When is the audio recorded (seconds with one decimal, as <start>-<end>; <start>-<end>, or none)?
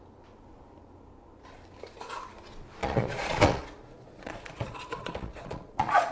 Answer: 0.0-2.8